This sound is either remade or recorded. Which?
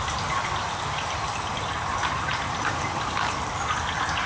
recorded